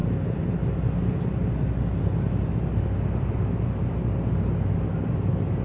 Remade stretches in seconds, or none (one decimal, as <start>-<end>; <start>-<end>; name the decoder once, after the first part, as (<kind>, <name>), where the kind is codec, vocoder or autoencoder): none

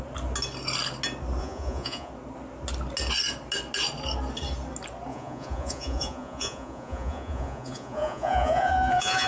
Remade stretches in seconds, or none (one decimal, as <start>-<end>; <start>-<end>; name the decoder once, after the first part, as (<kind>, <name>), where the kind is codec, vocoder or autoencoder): 1.4-2.1 (vocoder, Vocos); 5.1-9.3